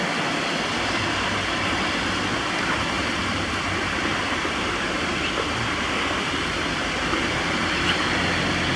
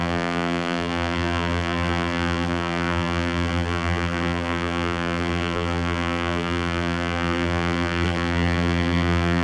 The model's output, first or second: second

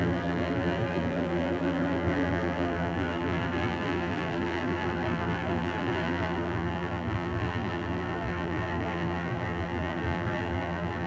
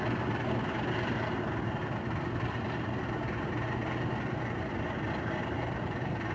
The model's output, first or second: first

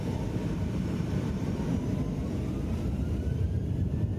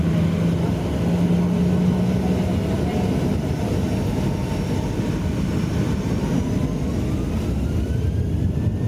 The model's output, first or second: first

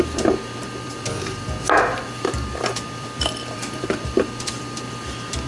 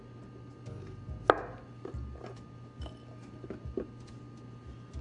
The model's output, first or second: first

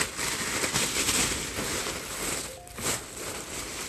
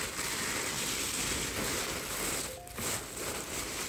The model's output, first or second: first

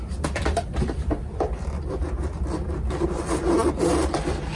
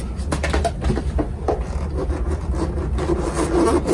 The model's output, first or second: first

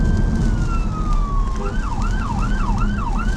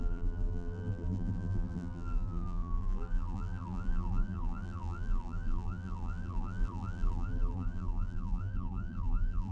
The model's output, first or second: second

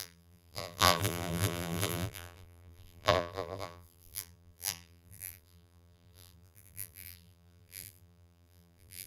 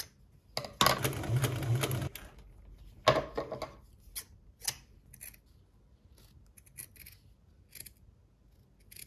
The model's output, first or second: first